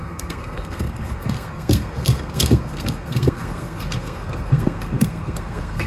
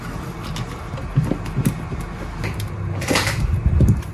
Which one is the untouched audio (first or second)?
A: second